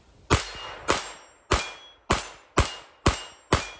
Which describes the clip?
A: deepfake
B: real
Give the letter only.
B